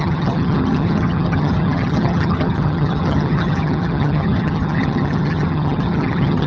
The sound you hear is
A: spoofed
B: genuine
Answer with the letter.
A